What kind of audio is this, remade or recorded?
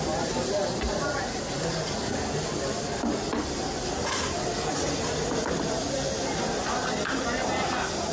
recorded